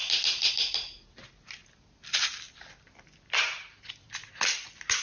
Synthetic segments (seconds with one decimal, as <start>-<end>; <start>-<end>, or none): none